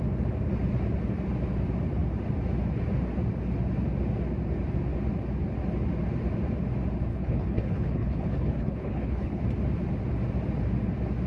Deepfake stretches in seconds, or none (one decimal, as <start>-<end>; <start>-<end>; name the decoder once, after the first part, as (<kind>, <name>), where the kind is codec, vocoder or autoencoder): 7.1-9.4 (codec, HILCodec)